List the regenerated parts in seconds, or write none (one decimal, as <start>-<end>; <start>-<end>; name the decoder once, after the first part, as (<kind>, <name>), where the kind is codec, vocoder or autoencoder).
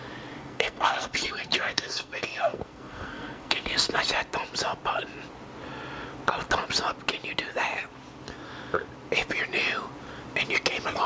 0.4-4.0 (codec, SNAC)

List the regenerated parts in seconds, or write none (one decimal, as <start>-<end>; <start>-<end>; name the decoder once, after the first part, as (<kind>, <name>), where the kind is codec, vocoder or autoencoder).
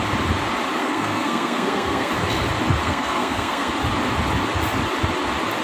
0.8-2.1 (codec, SNAC); 2.8-3.7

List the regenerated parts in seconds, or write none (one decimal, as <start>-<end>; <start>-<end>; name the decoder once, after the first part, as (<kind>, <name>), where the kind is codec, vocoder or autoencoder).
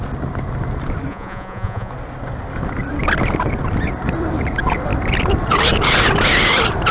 1.1-1.9 (vocoder, Vocos)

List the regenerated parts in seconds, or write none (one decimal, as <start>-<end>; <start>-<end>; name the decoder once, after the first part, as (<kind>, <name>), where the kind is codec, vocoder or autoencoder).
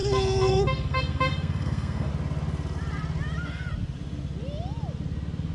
0.0-2.1 (codec, SNAC)